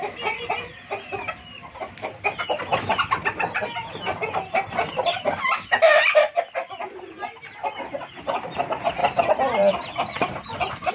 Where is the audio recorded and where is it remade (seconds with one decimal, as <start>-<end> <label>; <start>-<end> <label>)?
0.0-2.7 recorded; 2.7-3.3 remade; 3.3-9.0 recorded; 9.0-10.9 remade